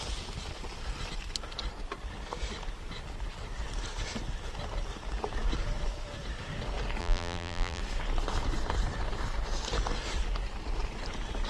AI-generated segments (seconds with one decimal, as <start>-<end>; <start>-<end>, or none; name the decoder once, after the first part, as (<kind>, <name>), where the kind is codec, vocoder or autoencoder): 7.0-7.8 (vocoder, BigVGAN v2)